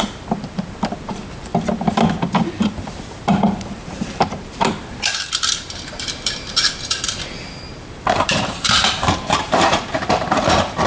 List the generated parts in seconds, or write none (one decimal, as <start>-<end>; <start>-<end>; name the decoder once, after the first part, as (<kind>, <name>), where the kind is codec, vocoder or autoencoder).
0.0-1.5 (vocoder, BigVGAN v2); 2.2-10.9